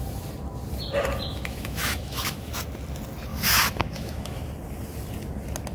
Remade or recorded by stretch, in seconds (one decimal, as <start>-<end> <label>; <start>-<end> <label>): 0.0-1.3 recorded; 1.3-2.5 remade; 2.5-3.3 recorded; 3.3-4.4 remade; 4.4-5.7 recorded